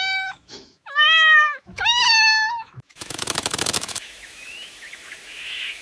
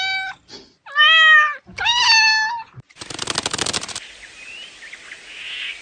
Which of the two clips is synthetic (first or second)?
first